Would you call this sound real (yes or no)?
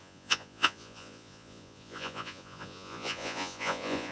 no